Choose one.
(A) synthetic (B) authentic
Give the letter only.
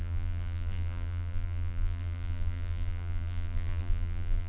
A